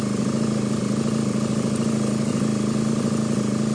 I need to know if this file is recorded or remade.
recorded